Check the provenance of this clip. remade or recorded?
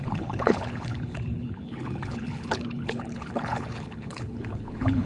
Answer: remade